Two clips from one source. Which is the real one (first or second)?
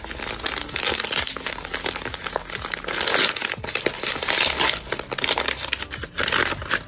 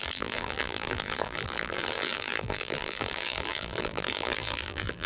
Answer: first